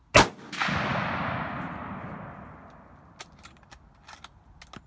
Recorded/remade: recorded